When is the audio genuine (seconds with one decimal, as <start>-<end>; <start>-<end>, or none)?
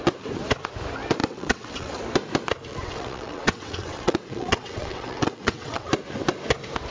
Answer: 0.0-1.2; 2.0-2.7; 5.9-6.9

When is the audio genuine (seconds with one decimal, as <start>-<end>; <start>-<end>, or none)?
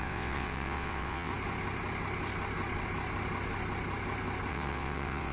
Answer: 1.3-4.5